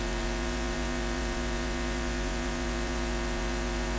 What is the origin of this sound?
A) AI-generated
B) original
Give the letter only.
A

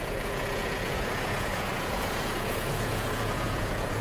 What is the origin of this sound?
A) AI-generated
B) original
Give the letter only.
A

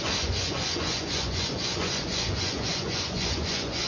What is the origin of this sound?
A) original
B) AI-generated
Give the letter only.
B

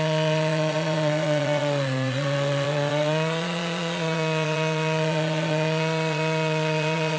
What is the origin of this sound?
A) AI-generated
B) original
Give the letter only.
A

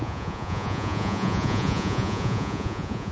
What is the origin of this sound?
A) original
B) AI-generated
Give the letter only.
B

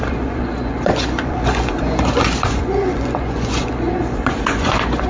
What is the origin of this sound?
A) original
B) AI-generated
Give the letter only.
B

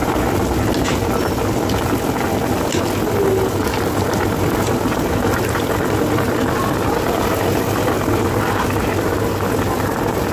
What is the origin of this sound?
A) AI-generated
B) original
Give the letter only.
B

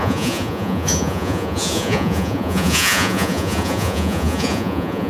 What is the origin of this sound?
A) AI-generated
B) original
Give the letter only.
A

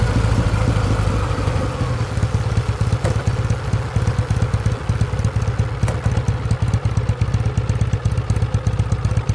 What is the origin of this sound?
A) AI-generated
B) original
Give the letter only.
B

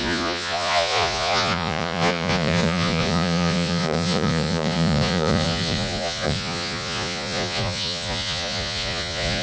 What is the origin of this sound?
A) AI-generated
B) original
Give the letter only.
A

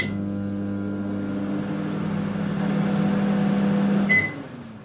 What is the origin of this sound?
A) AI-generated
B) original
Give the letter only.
B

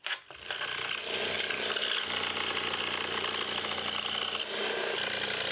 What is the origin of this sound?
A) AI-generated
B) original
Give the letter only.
B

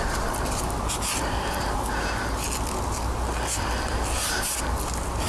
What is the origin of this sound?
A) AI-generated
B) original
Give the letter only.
B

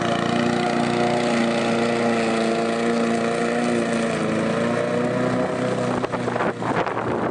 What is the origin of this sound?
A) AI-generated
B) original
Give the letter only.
B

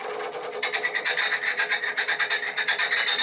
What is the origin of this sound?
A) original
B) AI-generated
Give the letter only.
A